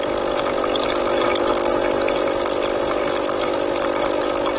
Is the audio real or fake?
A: real